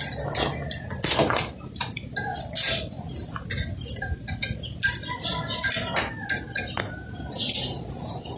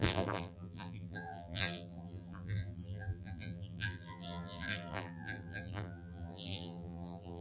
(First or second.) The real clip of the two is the first